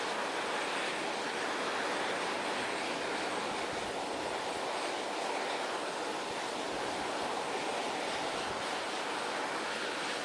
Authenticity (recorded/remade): recorded